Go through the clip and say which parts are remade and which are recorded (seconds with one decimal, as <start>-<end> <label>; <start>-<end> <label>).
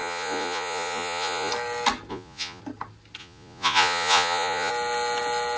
0.0-1.5 remade; 1.5-2.1 recorded; 2.1-2.6 remade; 2.6-3.2 recorded; 3.2-4.7 remade; 4.7-5.6 recorded